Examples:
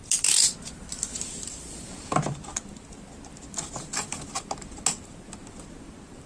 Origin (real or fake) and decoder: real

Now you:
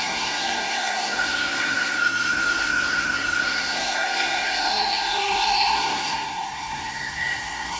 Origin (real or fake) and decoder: fake, codec, SNAC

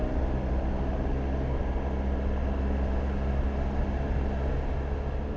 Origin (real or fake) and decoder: real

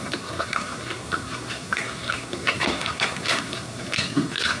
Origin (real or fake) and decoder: fake, codec, SNAC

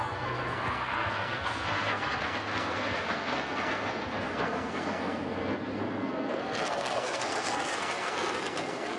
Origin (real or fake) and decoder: fake, codec, SNAC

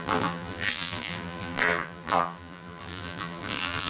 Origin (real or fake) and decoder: fake, vocoder, BigVGAN v2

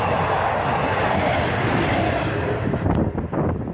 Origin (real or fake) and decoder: real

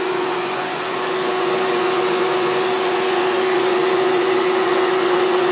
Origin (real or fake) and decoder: fake, vocoder, Vocos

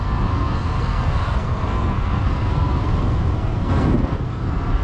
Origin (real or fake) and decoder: fake, codec, SNAC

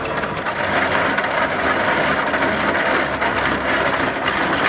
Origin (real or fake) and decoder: real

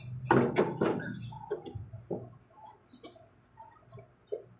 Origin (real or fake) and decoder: real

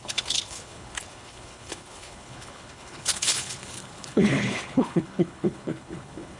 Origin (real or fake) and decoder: fake, codec, HILCodec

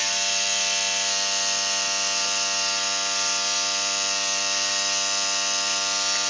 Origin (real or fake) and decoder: real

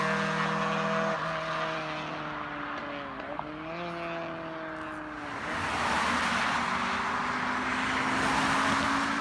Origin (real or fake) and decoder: real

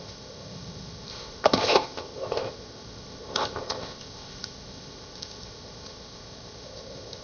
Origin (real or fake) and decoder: fake, codec, ZipCodec